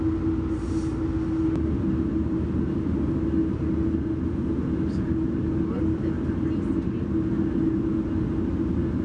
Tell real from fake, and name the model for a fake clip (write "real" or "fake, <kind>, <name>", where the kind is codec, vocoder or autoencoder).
real